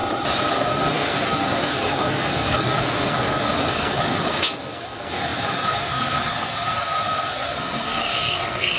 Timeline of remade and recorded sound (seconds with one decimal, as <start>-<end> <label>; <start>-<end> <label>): 0.0-0.5 recorded; 0.5-8.8 remade

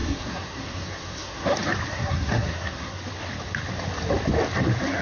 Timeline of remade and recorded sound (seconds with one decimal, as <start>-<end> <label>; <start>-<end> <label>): 0.0-1.5 remade; 1.5-1.9 recorded; 1.9-3.0 remade; 3.0-5.0 recorded

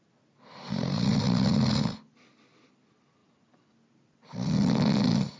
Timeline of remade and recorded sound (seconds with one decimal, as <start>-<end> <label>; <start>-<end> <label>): 0.0-5.4 recorded

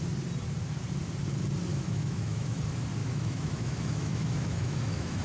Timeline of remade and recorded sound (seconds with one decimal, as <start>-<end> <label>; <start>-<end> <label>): 0.0-1.7 recorded; 1.7-2.6 remade; 2.6-3.0 recorded; 3.0-5.2 remade

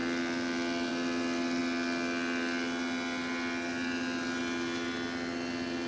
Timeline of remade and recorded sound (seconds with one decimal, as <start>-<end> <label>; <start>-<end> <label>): 0.0-5.9 recorded

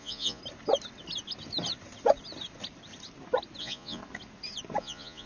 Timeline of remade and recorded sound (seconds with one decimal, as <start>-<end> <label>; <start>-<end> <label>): 0.0-0.4 remade; 0.4-3.6 recorded; 3.6-4.0 remade; 4.0-4.8 recorded; 4.8-5.3 remade

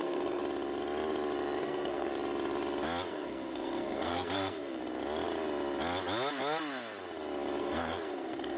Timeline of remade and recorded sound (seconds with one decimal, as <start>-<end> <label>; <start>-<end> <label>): 0.0-0.4 remade; 0.4-1.6 recorded; 1.6-2.1 remade; 2.1-3.1 recorded; 3.1-4.8 remade; 4.8-7.6 recorded; 7.6-8.6 remade